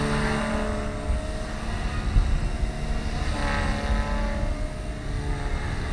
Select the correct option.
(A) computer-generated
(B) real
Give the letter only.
B